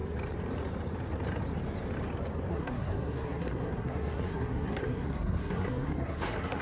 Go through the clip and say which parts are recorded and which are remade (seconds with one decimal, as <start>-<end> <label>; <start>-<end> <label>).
0.0-2.5 recorded; 2.5-6.6 remade